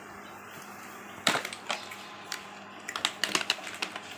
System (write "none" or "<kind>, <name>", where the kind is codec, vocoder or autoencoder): none